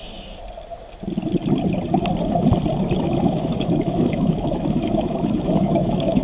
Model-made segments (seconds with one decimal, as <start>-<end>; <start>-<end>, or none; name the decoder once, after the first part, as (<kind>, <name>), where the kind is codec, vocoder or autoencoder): 3.0-6.2 (autoencoder, DAC-VAE)